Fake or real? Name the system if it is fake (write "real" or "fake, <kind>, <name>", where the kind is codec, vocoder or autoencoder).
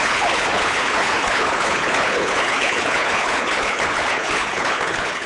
fake, codec, HILCodec